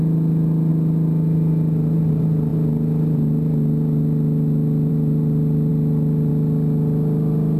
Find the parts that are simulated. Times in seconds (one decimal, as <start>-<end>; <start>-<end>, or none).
none